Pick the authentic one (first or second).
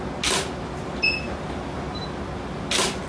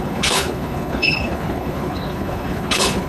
first